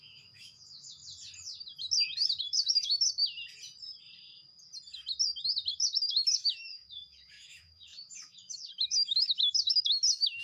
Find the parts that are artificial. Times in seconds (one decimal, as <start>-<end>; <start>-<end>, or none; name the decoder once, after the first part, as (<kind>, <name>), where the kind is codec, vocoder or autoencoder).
0.0-1.0 (autoencoder, DAC-VAE); 2.4-3.2; 5.7-10.4